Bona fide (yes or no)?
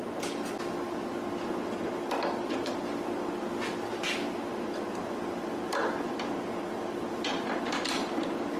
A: yes